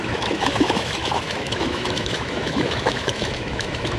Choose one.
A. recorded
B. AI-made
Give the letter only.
B